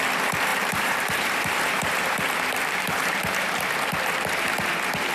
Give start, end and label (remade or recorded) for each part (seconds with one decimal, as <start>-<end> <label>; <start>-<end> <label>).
0.0-0.5 recorded; 0.5-3.6 remade; 3.6-5.1 recorded